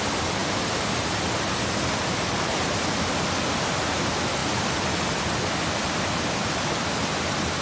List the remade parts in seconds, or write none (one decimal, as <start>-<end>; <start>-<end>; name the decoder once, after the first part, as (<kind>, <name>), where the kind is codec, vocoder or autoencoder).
none